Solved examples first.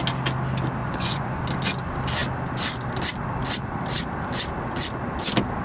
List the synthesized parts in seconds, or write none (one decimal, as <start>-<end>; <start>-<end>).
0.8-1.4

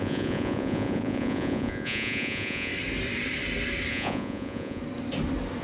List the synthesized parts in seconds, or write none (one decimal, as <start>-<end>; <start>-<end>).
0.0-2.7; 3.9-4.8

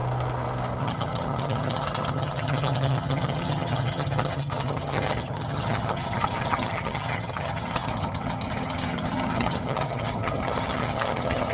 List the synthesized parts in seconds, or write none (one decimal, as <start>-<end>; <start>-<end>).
0.8-11.5

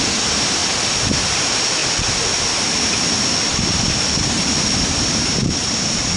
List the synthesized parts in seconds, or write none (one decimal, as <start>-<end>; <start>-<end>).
0.0-0.6; 1.3-1.8; 3.4-6.2

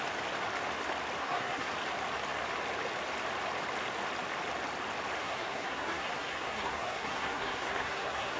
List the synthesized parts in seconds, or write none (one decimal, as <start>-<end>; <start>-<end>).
1.2-1.7; 5.2-8.4